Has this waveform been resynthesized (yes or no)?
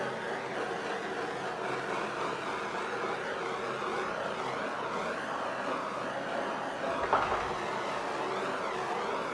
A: no